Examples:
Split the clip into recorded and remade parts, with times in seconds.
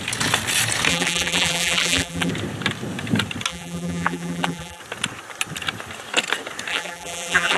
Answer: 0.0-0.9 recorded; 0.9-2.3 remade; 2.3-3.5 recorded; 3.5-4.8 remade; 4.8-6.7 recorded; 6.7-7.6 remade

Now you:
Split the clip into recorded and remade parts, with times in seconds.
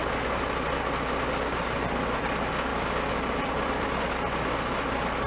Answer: 0.0-2.7 recorded; 2.7-3.9 remade; 3.9-5.3 recorded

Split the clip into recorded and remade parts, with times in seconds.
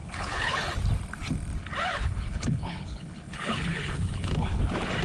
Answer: 0.0-0.7 remade; 0.7-1.9 recorded; 1.9-4.6 remade; 4.6-5.0 recorded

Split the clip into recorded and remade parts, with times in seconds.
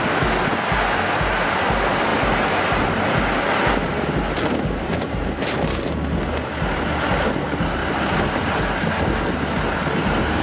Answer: 0.0-2.1 recorded; 2.1-2.9 remade; 2.9-7.8 recorded; 7.8-8.6 remade; 8.6-10.4 recorded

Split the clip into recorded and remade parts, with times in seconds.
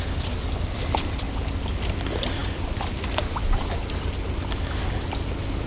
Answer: 0.0-5.7 recorded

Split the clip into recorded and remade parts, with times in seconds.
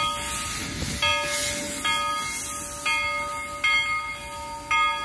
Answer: 0.0-5.0 recorded